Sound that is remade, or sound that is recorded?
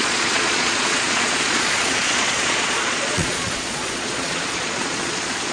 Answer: remade